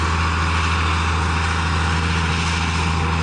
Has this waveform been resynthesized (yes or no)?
no